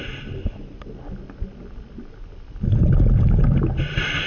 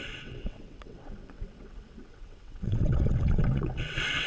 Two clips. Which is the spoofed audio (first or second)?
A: second